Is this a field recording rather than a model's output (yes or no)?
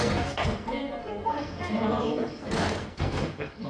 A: no